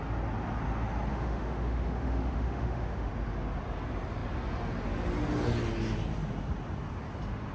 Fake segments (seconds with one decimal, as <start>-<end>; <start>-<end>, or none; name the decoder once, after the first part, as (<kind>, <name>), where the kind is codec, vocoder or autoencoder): 1.1-3.1 (autoencoder, DAC-VAE)